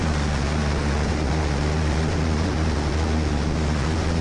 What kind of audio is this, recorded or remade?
remade